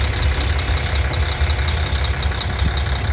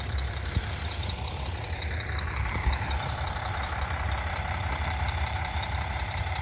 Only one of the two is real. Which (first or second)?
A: first